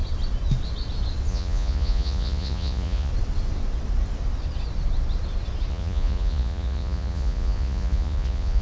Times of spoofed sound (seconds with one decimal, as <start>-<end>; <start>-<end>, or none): 1.3-3.1; 5.7-8.6